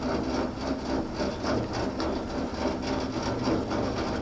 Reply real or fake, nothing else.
real